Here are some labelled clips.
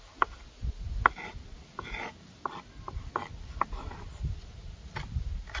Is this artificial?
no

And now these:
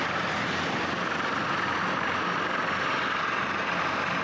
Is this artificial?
no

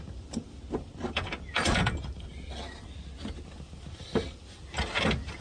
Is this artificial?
no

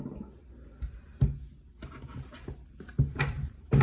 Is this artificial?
no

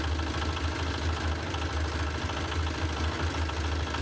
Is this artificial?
no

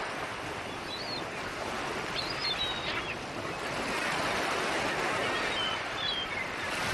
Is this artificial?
no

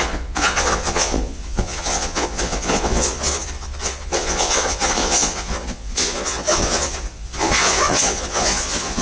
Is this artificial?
yes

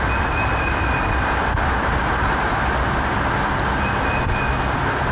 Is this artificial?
no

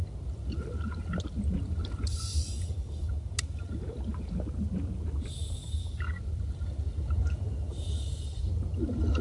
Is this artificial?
no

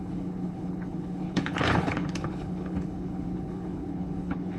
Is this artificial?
yes